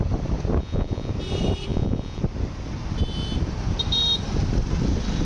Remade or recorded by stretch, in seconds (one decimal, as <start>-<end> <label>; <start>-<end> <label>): 0.0-0.6 recorded; 0.6-1.1 remade; 1.1-1.7 recorded; 1.7-2.2 remade; 2.2-5.2 recorded